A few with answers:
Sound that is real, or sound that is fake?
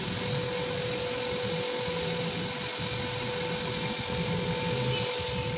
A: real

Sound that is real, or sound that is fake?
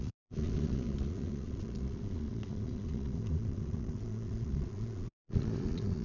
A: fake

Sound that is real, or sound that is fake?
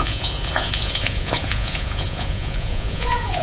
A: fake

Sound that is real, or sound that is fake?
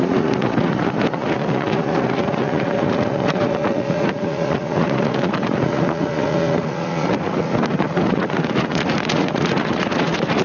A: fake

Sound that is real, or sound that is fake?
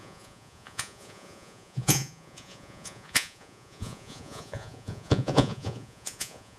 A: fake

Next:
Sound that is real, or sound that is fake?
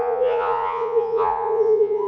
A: fake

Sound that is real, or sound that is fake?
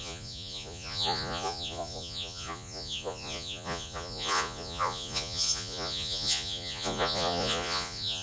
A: fake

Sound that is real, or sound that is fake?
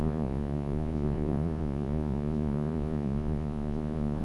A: fake